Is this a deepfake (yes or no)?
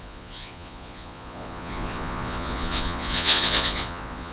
yes